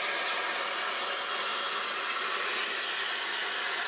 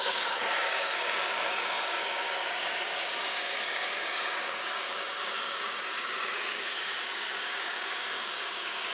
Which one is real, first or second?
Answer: first